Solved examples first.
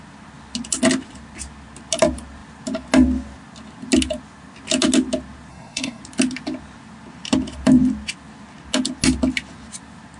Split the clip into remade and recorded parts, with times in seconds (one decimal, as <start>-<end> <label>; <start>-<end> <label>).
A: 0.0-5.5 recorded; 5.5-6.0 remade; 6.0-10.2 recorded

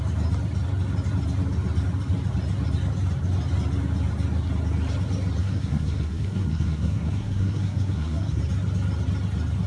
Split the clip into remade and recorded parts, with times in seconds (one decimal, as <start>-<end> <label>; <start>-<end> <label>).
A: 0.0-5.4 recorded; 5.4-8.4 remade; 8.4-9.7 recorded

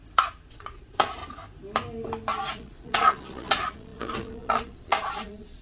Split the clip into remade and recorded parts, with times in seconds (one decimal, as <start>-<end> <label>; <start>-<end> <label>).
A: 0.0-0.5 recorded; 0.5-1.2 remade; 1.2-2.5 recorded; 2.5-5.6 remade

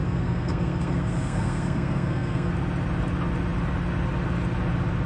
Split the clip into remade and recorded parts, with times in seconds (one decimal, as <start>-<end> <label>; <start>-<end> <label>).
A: 0.0-2.5 remade; 2.5-5.1 recorded

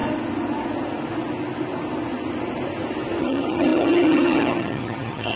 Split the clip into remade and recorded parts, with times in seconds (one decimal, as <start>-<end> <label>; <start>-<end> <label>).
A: 0.0-3.2 recorded; 3.2-5.4 remade

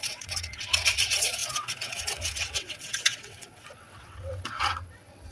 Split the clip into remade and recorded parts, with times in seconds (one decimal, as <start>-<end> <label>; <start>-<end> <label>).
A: 0.0-5.3 remade

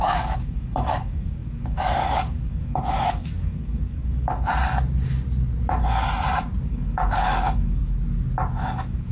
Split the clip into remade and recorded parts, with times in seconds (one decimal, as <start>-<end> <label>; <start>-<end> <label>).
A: 0.0-4.5 remade; 4.5-6.7 recorded; 6.7-7.8 remade; 7.8-8.6 recorded; 8.6-9.1 remade

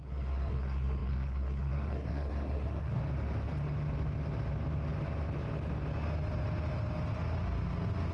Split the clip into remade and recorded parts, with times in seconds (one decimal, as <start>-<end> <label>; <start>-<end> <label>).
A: 0.0-3.0 remade; 3.0-8.1 recorded